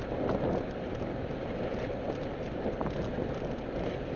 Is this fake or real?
real